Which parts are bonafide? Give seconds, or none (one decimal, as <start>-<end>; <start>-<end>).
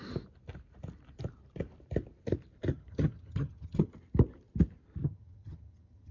0.0-2.7; 3.9-5.0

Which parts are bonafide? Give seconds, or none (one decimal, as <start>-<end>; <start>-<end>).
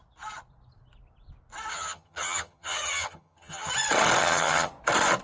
0.0-1.7; 3.7-4.2; 4.7-5.2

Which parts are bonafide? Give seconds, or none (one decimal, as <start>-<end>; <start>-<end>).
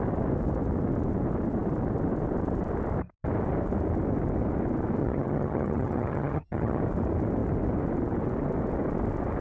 0.0-5.0; 6.8-9.4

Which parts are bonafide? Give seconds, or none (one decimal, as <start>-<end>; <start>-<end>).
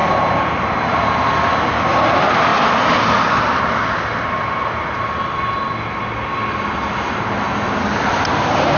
0.0-8.8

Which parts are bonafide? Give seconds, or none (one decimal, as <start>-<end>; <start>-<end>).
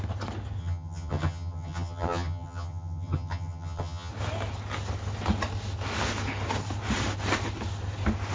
0.0-0.6; 4.1-8.3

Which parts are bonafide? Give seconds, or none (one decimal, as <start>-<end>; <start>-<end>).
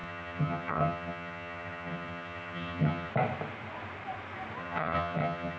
3.1-4.6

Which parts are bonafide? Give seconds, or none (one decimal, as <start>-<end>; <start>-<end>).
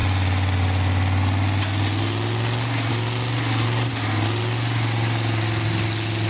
0.0-6.3